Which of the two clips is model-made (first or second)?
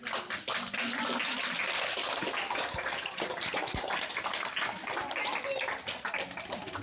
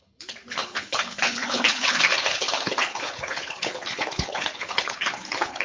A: second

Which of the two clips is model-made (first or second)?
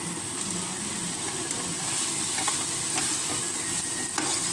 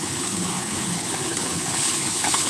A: second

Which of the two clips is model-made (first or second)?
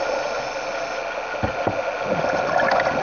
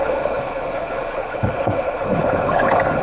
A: second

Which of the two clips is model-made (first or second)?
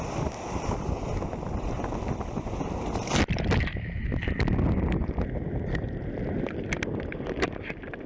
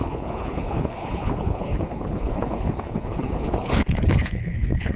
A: second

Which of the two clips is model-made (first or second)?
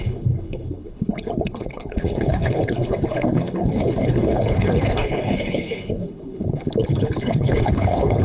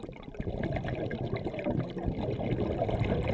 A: first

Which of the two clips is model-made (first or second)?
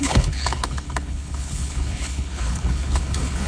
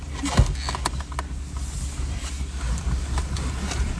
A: first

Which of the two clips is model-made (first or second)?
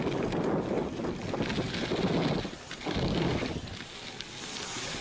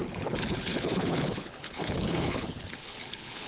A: second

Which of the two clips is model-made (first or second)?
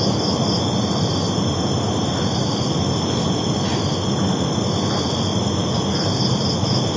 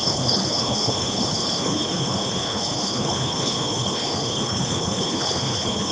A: second